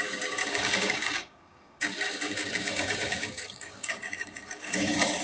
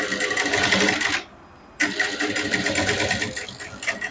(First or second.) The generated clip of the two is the first